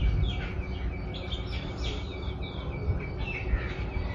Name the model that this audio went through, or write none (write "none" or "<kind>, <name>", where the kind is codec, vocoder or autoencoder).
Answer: none